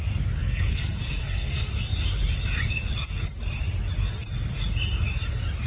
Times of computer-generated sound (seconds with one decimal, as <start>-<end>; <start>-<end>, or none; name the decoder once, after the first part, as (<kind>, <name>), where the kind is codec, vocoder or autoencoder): 0.4-1.7 (codec, SNAC)